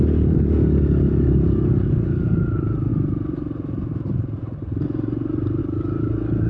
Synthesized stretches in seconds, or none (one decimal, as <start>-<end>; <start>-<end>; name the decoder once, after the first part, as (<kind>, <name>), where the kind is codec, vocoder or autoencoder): 0.0-2.9 (codec, DAC); 5.6-6.5